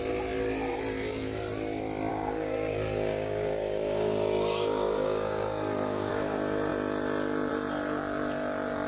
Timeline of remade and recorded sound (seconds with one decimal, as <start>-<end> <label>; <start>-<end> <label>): 0.0-2.1 recorded; 2.1-6.1 remade; 6.1-8.9 recorded